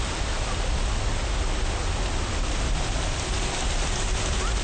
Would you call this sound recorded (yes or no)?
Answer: yes